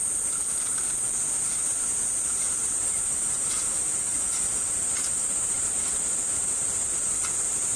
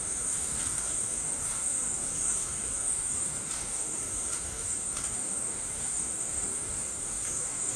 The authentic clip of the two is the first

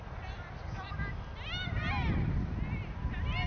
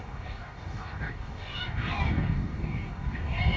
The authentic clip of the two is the first